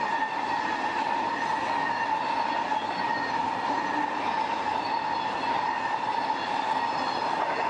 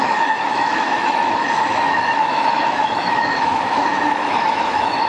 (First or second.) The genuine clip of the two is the first